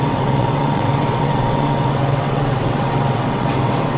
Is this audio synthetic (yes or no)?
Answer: yes